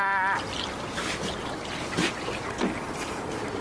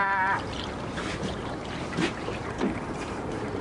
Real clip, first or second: first